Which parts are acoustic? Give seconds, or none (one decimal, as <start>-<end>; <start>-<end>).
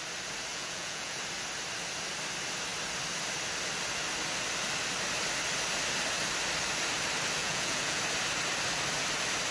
0.0-0.5; 1.2-7.4; 8.0-9.5